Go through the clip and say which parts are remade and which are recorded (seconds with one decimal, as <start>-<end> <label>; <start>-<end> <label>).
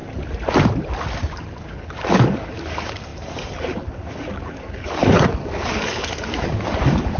0.0-1.6 recorded; 1.6-7.2 remade